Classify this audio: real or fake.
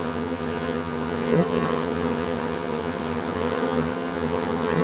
fake